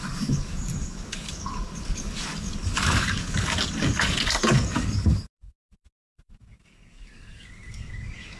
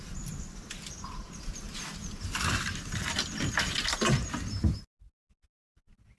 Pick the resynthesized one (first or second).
first